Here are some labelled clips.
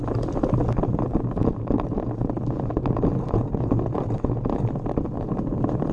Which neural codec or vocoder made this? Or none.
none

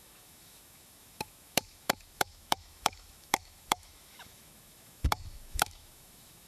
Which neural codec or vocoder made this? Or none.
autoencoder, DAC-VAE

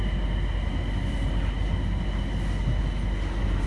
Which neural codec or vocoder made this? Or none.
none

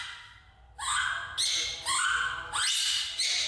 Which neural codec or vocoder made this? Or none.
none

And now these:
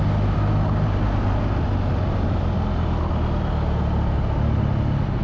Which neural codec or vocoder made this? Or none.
none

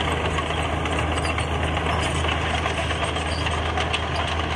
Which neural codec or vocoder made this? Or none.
none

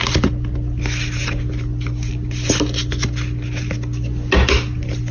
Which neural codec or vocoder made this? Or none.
none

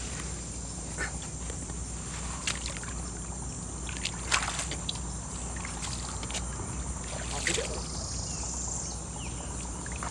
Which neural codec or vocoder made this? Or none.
none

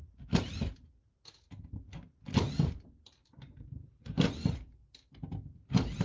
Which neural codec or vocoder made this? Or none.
none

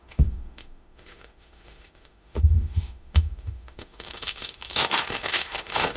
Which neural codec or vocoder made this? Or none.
autoencoder, DAC-VAE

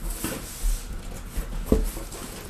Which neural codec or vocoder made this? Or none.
none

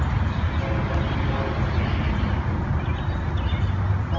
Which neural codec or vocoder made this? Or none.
none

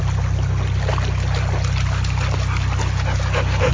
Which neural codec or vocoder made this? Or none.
none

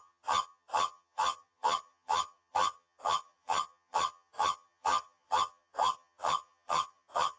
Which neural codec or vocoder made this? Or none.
vocoder, HiFi-GAN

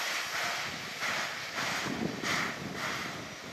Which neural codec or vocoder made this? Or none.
none